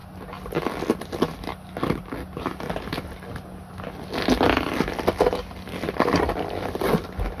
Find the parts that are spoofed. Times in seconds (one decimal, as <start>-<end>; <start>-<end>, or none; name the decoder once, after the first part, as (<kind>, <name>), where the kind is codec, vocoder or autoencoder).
none